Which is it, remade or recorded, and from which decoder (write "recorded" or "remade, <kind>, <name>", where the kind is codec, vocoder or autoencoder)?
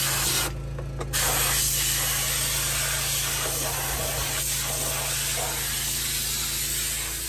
recorded